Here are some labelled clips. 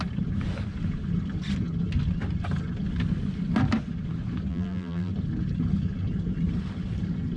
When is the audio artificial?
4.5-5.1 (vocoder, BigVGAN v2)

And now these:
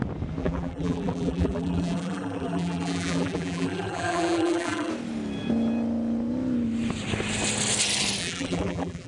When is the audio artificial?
0.4-4.9 (vocoder, BigVGAN v2); 8.2-9.1

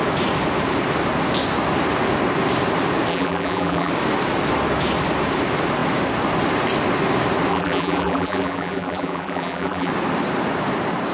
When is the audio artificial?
3.1-3.9 (vocoder, BigVGAN v2); 7.5-9.9

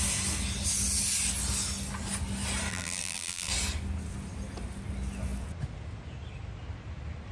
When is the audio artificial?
2.7-3.5 (vocoder, BigVGAN v2)

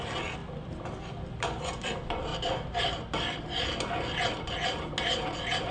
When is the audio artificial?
0.4-1.6 (vocoder, BigVGAN v2)

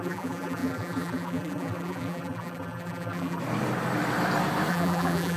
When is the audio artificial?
0.0-3.4 (vocoder, BigVGAN v2); 4.7-5.4

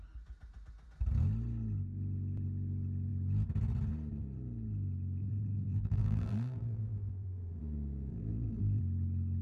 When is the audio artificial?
5.2-7.6 (vocoder, BigVGAN v2); 8.1-8.8